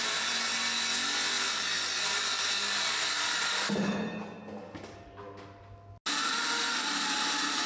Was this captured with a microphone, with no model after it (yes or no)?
yes